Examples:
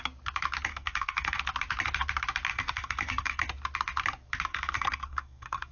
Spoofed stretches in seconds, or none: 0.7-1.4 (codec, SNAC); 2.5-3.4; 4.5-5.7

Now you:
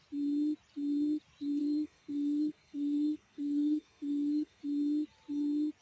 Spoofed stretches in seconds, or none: 1.6-4.6 (codec, SNAC)

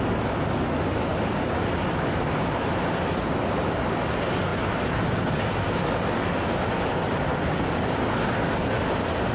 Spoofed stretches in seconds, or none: none

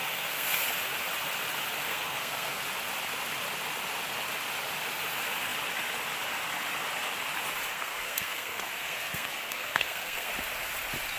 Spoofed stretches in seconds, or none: 0.0-0.7 (codec, SNAC); 1.9-2.6; 7.7-10.3

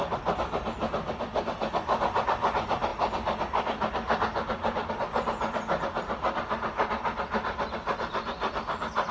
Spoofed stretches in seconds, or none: none